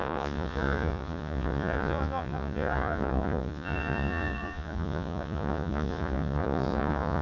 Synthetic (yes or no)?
yes